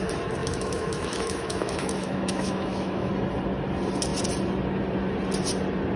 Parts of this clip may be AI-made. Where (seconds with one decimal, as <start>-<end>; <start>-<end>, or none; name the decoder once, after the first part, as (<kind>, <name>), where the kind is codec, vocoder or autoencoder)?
0.4-3.1 (autoencoder, DAC-VAE)